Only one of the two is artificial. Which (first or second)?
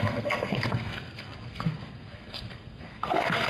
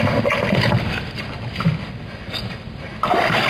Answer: first